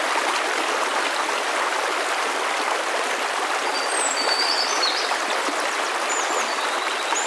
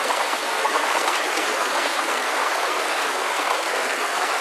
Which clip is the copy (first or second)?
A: second